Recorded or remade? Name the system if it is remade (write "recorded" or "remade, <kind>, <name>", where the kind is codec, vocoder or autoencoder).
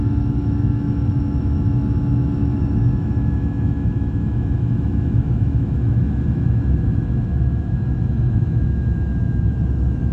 remade, autoencoder, DAC-VAE